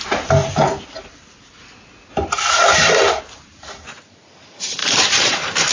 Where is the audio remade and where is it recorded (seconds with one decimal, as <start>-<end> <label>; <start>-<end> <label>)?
0.0-4.8 recorded; 4.8-5.7 remade

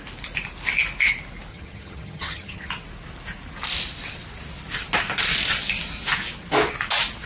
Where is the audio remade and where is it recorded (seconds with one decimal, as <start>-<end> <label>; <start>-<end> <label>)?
0.0-1.5 recorded; 1.5-2.7 remade; 2.7-7.3 recorded

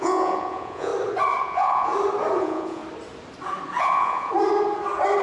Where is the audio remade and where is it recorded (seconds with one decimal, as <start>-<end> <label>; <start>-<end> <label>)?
0.0-0.9 remade; 0.9-1.4 recorded; 1.4-1.9 remade; 1.9-2.4 recorded; 2.4-2.8 remade; 2.8-3.8 recorded; 3.8-4.3 remade; 4.3-5.2 recorded

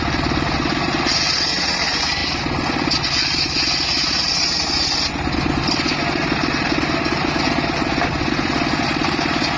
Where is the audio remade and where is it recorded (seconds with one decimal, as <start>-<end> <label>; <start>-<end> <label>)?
0.0-9.6 recorded

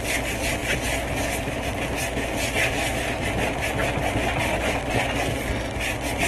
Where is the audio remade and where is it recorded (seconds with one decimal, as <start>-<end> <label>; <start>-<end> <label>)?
0.0-6.3 recorded

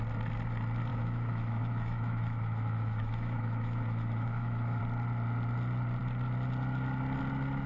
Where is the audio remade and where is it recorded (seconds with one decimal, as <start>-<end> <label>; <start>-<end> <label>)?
0.0-0.9 recorded; 0.9-4.8 remade; 4.8-7.7 recorded

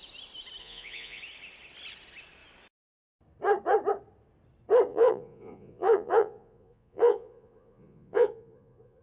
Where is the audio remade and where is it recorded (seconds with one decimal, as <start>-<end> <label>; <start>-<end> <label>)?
0.0-0.6 recorded; 0.6-1.2 remade; 1.2-4.9 recorded; 4.9-9.0 remade